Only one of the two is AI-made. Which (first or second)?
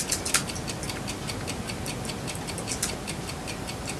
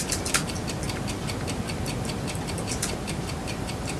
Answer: second